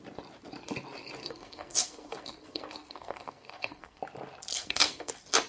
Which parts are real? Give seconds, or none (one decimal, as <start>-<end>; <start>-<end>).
0.0-1.2; 4.0-4.5; 5.1-5.5

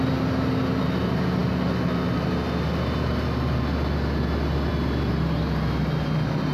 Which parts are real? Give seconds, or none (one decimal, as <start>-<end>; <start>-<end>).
0.0-6.5

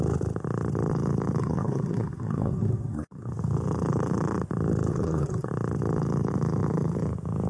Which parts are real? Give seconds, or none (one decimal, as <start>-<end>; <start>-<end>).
0.0-1.4; 3.3-4.9; 5.5-7.5

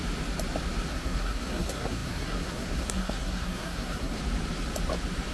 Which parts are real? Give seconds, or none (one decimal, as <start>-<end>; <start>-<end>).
0.0-0.9; 4.2-5.3

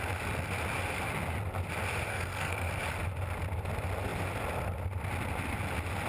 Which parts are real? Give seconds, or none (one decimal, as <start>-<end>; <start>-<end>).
0.0-2.1; 2.7-6.1

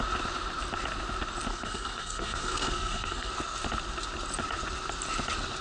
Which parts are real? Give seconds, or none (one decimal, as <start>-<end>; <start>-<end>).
0.0-1.5; 3.3-5.6

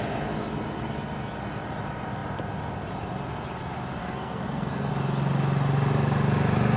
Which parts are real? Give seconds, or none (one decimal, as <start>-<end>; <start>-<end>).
0.0-4.0; 4.9-6.8